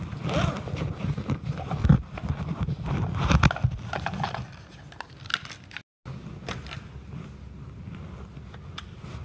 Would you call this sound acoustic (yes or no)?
yes